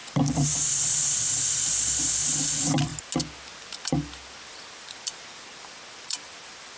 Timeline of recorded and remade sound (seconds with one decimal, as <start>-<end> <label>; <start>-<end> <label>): 0.0-2.9 remade; 2.9-3.5 recorded; 3.5-6.8 remade